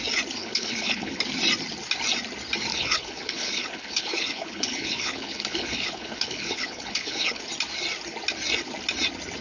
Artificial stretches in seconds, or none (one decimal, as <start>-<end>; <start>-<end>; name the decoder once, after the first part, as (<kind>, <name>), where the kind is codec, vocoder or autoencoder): 0.4-1.2 (codec, HILCodec); 2.7-7.4